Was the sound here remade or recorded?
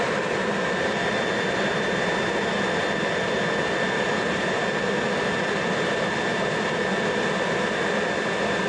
recorded